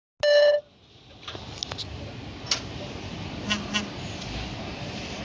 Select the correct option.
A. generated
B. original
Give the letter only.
B